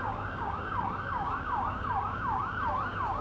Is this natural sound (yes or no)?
no